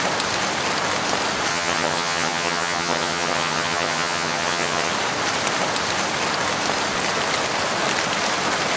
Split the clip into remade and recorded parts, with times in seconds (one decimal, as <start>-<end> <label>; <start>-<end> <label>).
0.0-1.5 recorded; 1.5-4.9 remade; 4.9-8.8 recorded